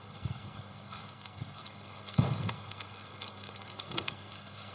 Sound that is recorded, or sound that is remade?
remade